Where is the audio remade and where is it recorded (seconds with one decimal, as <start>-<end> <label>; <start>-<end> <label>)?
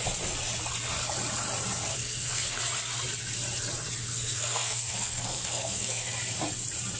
0.0-1.9 recorded; 1.9-2.6 remade; 2.6-4.0 recorded; 4.0-6.1 remade; 6.1-7.0 recorded